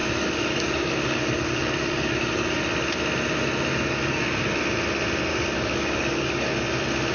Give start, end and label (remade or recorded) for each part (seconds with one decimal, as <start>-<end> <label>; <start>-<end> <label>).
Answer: 0.0-2.6 remade; 2.6-3.7 recorded; 3.7-4.6 remade; 4.6-5.3 recorded; 5.3-6.5 remade; 6.5-7.1 recorded